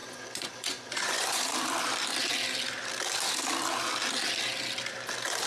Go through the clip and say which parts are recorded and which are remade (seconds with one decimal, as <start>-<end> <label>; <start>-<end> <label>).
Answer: 0.0-1.4 remade; 1.4-5.5 recorded

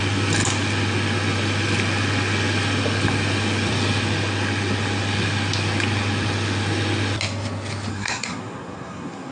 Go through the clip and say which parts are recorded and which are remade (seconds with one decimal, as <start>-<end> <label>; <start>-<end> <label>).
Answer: 0.0-7.9 recorded; 7.9-9.3 remade

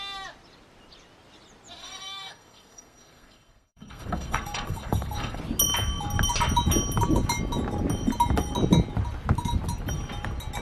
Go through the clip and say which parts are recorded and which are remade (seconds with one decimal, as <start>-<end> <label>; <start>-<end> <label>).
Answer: 0.0-1.8 recorded; 1.8-5.4 remade; 5.4-10.6 recorded